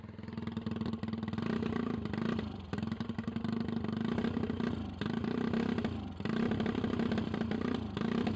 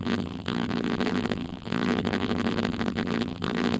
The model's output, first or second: second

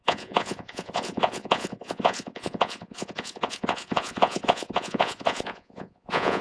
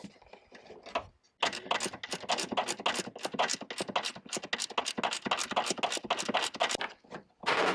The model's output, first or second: first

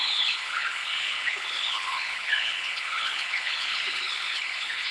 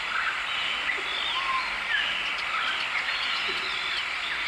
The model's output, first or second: first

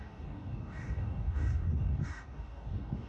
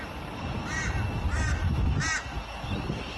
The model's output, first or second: first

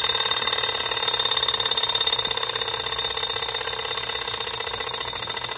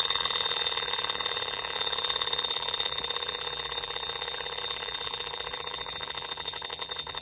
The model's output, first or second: second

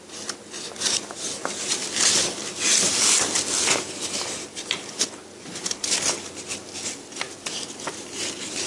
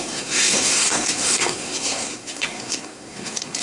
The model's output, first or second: second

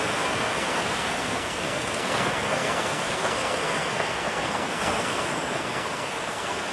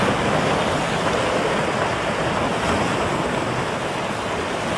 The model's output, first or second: first